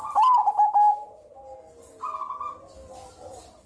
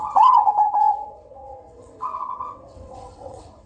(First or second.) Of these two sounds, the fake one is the second